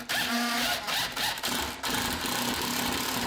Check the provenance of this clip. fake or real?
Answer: real